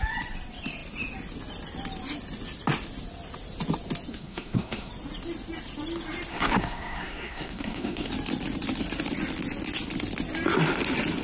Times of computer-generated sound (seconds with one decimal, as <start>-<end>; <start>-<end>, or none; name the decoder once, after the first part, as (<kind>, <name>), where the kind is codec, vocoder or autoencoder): 4.1-4.9 (codec, SNAC); 6.3-8.1